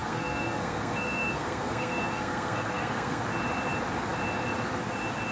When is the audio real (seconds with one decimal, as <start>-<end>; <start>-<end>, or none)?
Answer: 3.2-5.3